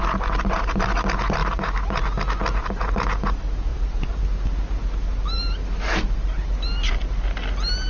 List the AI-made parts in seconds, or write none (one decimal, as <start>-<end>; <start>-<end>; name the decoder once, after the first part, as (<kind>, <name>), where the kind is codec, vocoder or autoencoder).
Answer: 3.7-4.2 (vocoder, BigVGAN v2)